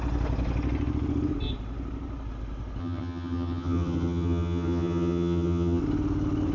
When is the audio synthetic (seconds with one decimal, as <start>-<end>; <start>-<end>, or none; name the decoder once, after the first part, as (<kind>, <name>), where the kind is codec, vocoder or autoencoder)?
2.8-5.8 (vocoder, HiFi-GAN)